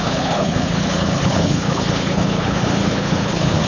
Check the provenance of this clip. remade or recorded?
remade